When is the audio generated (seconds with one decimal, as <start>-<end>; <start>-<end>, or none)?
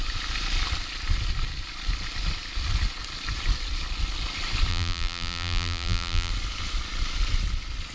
4.7-6.3